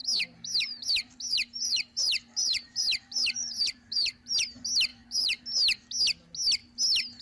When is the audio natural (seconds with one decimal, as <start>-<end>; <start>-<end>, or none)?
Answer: 4.3-4.9; 5.4-7.2